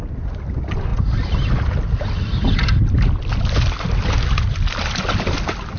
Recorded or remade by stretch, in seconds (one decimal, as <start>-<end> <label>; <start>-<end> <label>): 0.0-5.8 recorded